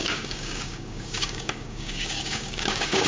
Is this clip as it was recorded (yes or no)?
no